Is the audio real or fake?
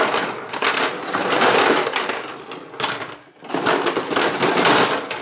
real